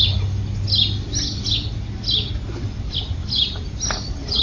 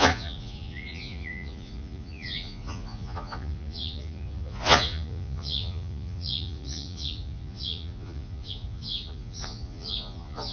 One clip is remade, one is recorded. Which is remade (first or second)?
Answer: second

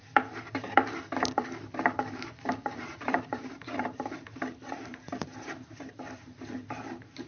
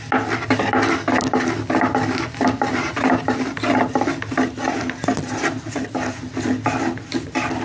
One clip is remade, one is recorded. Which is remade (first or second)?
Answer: first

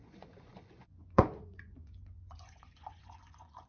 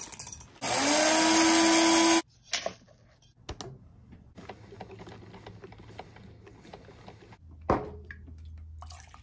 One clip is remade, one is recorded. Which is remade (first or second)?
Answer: first